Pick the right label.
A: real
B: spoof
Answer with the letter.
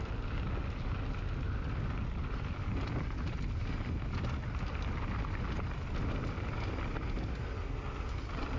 A